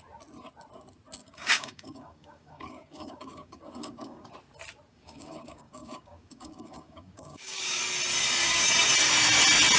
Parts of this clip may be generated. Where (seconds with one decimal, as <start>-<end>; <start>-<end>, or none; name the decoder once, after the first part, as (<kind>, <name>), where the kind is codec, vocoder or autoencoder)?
1.2-4.3 (codec, DAC); 4.9-7.8; 8.4-8.9